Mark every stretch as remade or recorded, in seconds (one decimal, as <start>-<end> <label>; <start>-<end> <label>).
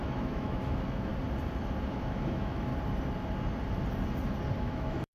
0.0-1.1 remade; 1.1-1.9 recorded; 1.9-2.7 remade; 2.7-4.6 recorded; 4.6-5.1 remade